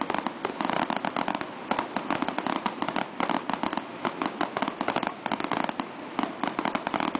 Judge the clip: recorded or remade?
recorded